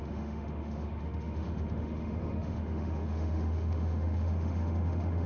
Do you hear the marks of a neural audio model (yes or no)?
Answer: yes